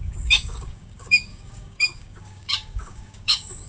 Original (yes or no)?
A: no